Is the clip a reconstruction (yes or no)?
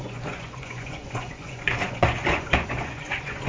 yes